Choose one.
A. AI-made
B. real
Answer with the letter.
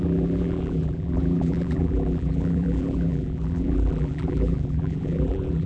A